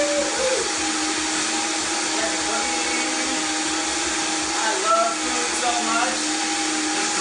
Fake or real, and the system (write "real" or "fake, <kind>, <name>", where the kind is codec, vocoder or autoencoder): real